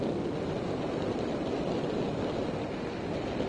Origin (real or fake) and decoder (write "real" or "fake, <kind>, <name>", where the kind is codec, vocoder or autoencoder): real